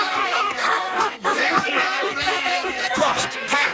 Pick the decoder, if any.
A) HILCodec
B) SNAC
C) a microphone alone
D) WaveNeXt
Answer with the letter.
B